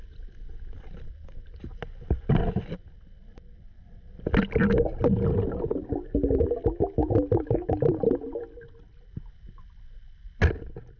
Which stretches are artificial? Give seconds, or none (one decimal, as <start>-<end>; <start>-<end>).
none